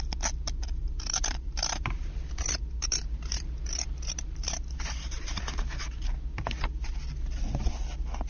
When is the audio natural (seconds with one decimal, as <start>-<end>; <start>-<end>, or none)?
0.0-0.8; 5.6-8.3